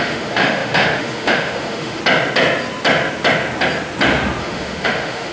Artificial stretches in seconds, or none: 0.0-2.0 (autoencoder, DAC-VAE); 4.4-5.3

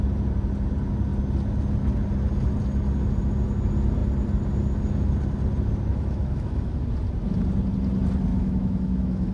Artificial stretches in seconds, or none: 5.9-6.7 (autoencoder, DAC-VAE); 8.3-9.3

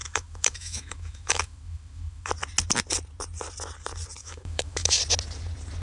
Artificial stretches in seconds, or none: 0.0-2.3 (autoencoder, DAC-VAE); 4.2-5.0

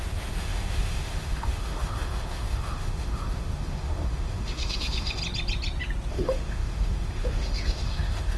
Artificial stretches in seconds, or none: 0.0-5.2 (autoencoder, DAC-VAE); 6.1-8.4

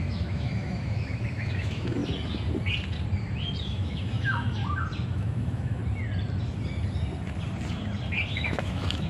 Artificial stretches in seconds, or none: 0.0-2.0 (autoencoder, DAC-VAE); 3.6-4.6; 5.1-5.8; 8.3-9.1